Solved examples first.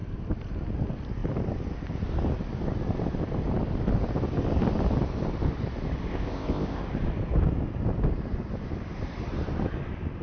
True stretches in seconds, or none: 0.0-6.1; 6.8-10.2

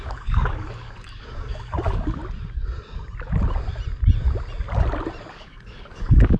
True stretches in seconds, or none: 2.2-5.2